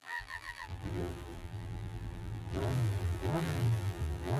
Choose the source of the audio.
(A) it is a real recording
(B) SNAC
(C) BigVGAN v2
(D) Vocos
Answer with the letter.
C